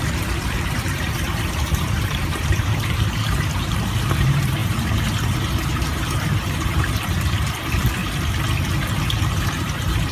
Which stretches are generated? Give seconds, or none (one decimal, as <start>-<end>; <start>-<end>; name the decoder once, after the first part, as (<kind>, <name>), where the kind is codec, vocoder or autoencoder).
0.0-8.0 (vocoder, BigVGAN v2); 9.3-10.1